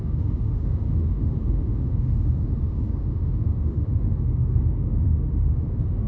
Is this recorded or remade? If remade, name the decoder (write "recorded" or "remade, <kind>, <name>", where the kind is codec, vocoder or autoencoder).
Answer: remade, autoencoder, DAC-VAE